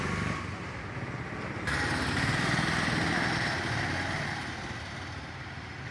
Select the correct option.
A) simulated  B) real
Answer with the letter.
B